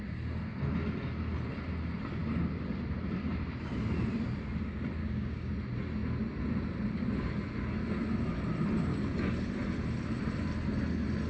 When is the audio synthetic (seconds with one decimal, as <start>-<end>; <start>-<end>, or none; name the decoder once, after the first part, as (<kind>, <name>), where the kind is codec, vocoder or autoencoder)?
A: 5.0-5.5 (codec, DAC)